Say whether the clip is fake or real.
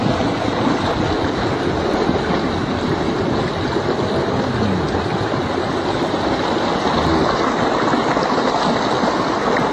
real